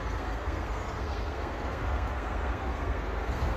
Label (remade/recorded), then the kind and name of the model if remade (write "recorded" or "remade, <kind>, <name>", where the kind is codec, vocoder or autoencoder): remade, codec, SNAC